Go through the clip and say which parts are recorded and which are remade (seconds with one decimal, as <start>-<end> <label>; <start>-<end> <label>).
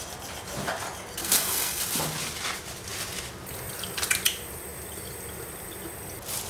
0.0-1.2 recorded; 1.2-1.8 remade; 1.8-6.5 recorded